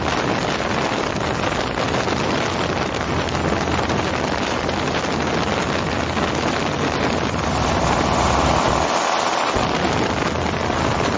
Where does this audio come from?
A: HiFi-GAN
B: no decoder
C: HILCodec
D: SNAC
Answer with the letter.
B